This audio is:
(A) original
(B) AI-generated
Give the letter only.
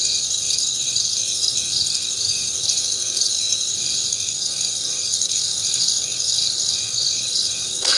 B